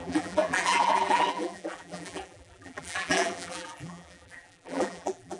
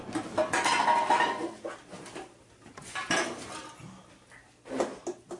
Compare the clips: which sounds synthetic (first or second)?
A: first